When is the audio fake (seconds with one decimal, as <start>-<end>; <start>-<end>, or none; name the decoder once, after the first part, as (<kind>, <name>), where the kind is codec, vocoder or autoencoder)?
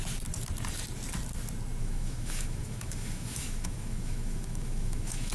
1.8-5.3 (autoencoder, DAC-VAE)